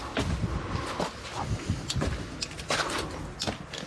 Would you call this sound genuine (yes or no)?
yes